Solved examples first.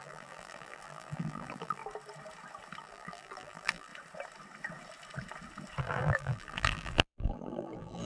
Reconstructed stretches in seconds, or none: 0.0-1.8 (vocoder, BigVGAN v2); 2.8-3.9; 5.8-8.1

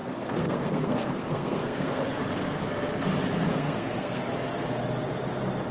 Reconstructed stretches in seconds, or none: 0.0-2.0 (codec, SNAC); 3.5-4.2

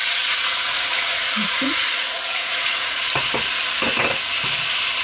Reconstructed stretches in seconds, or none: 0.0-3.0 (vocoder, Vocos)